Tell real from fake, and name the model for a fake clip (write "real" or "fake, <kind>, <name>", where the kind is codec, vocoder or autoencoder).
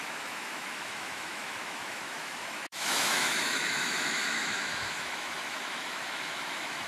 fake, autoencoder, DAC-VAE